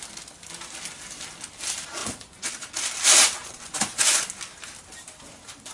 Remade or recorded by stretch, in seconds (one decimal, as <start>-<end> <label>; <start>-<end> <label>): 0.0-2.0 recorded; 2.0-2.5 remade; 2.5-3.4 recorded; 3.4-4.2 remade; 4.2-5.7 recorded